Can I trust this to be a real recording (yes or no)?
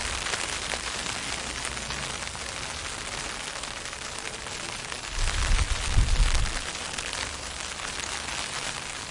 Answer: yes